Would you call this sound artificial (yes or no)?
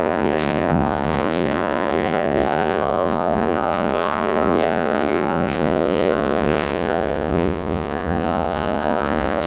yes